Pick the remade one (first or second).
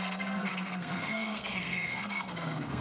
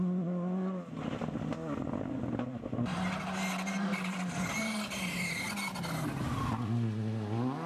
first